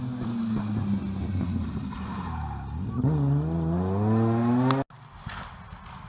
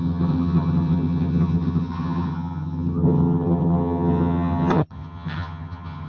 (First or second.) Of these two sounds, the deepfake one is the second